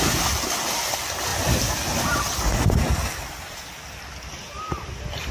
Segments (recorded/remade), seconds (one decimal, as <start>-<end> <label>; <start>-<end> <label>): 0.0-5.3 recorded